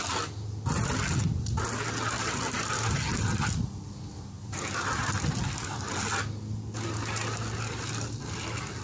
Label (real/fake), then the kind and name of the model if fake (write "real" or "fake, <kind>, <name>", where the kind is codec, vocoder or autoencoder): real